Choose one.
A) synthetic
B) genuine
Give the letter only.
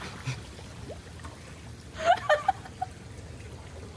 B